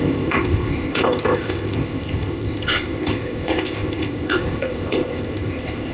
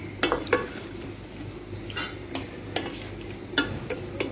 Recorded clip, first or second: second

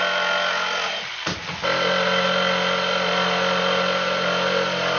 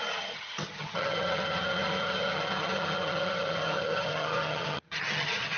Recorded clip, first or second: first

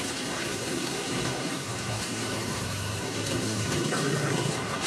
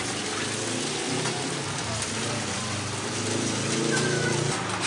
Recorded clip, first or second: second